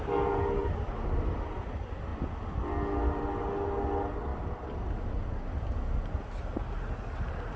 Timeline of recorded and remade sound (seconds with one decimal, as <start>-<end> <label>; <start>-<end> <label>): 0.0-0.6 recorded; 0.6-1.5 remade; 1.5-7.6 recorded